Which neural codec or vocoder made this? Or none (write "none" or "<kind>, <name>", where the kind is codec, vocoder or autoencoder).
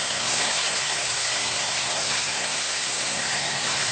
codec, SNAC